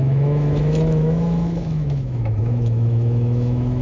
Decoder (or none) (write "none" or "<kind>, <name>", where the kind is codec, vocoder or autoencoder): autoencoder, DAC-VAE